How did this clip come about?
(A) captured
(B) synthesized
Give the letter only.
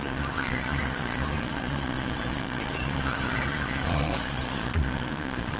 B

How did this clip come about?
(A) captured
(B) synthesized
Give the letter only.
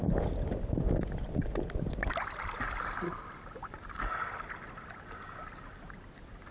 A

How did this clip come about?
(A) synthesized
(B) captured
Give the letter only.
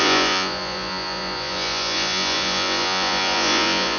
A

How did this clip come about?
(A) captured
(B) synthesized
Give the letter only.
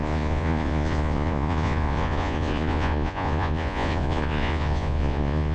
B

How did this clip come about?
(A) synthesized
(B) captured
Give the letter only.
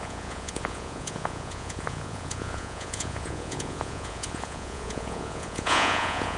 A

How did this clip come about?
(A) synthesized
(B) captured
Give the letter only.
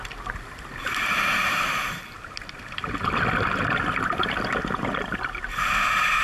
B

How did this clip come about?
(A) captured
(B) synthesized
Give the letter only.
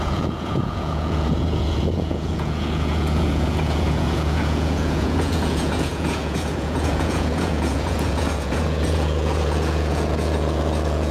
B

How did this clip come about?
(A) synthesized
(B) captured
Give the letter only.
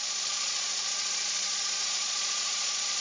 A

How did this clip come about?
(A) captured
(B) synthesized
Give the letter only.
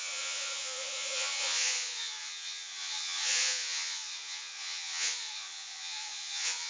B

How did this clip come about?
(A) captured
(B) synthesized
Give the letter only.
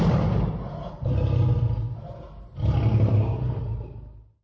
A